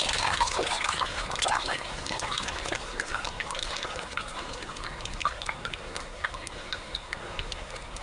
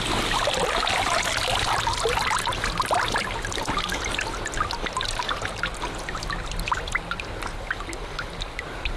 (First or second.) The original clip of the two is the second